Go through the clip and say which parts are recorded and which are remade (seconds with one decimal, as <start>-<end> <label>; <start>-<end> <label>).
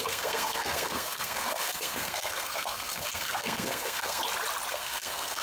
0.0-4.2 remade; 4.2-4.7 recorded; 4.7-5.4 remade